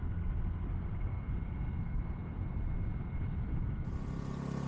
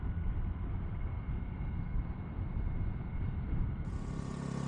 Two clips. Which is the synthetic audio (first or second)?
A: second